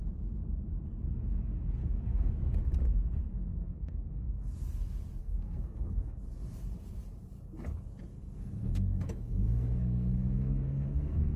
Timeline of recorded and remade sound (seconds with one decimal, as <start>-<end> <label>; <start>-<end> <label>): 0.0-1.8 recorded; 1.8-2.3 remade; 2.3-3.3 recorded; 3.3-4.5 remade; 4.5-5.2 recorded; 5.2-6.2 remade; 6.2-8.1 recorded; 8.1-11.4 remade